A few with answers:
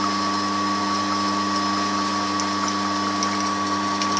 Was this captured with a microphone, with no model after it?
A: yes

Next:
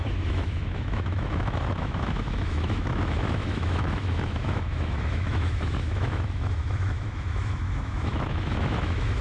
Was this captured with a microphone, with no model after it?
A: no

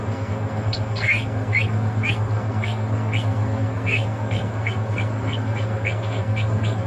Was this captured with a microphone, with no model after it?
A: no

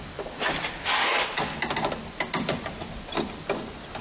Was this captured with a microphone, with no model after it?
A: yes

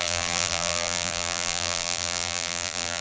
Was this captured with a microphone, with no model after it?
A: no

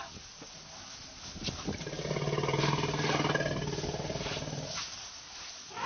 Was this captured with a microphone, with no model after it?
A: yes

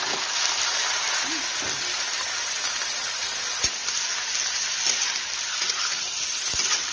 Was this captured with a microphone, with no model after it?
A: yes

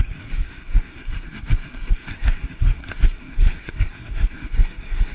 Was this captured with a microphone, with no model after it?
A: no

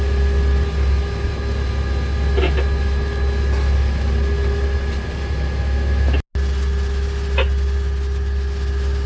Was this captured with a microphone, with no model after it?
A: yes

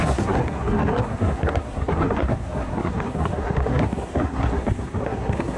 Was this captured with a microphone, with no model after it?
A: no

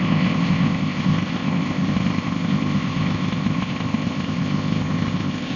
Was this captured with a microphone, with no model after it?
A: no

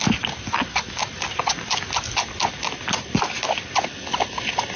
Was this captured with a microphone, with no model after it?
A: yes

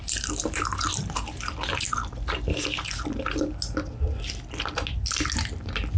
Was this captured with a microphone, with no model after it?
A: yes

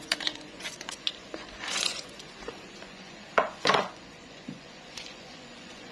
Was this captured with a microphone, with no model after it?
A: no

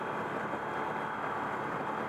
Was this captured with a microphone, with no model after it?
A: yes